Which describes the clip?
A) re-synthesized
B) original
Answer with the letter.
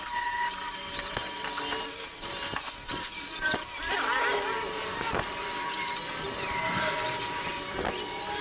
B